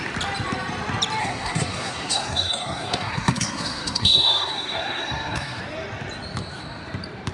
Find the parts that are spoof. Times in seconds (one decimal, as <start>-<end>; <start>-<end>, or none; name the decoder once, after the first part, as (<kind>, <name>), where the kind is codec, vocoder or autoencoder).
1.2-5.6 (codec, SNAC)